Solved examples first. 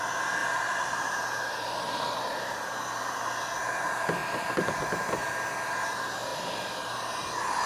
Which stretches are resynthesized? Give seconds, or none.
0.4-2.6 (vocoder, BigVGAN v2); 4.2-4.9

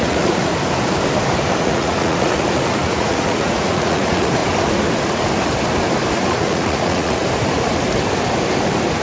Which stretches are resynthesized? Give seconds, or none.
0.0-0.5 (vocoder, Vocos); 1.6-4.4; 6.1-7.2